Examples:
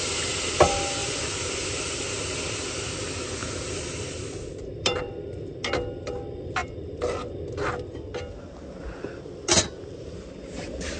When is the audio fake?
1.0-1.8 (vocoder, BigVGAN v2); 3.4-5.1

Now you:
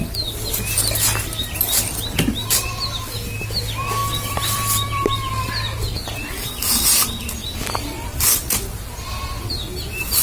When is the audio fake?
4.0-5.5 (vocoder, BigVGAN v2); 7.4-8.9

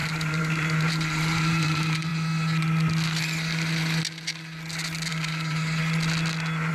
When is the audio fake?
0.0-2.1 (vocoder, BigVGAN v2); 5.1-5.8

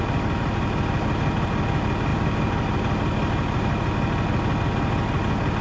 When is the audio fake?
none

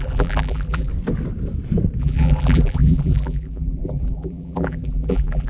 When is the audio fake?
0.0-0.9 (vocoder, BigVGAN v2); 2.0-5.5